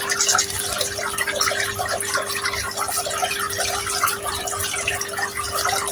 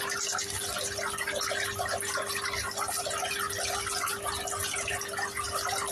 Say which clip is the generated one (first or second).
first